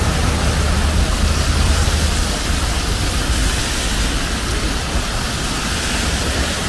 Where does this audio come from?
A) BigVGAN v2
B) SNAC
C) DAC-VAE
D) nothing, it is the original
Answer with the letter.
D